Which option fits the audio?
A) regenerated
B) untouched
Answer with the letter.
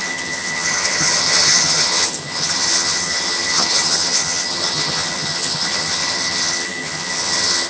A